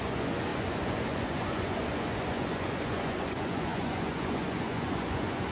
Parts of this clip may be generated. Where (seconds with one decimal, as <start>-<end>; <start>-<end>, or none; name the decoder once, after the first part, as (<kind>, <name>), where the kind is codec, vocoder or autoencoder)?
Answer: 0.0-5.5 (vocoder, Vocos)